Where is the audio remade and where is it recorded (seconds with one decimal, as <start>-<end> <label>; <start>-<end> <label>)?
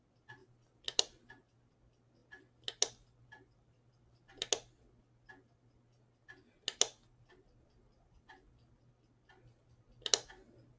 0.0-10.8 recorded